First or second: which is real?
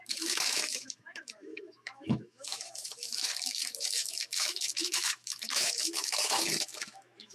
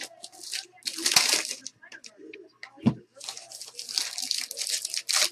second